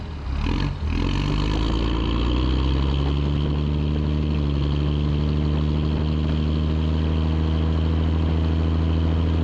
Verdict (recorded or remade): recorded